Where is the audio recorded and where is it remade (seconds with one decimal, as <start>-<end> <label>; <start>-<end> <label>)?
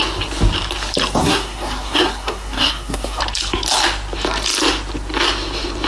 0.0-1.2 recorded; 1.2-3.2 remade; 3.2-5.9 recorded